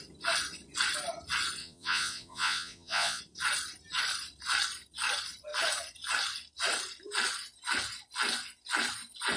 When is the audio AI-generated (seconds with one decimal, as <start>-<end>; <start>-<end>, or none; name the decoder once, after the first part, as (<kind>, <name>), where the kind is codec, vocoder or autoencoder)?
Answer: 1.6-3.2 (vocoder, Vocos)